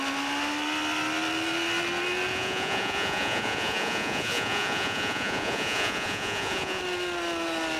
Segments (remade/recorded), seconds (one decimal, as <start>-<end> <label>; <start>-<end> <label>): 0.0-2.3 recorded; 2.3-6.8 remade; 6.8-7.8 recorded